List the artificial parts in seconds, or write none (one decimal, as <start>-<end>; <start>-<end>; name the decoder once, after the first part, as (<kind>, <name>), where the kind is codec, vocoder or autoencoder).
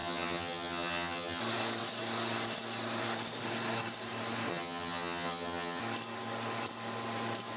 0.0-1.4 (vocoder, HiFi-GAN); 4.5-5.8